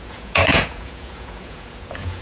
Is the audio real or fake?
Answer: fake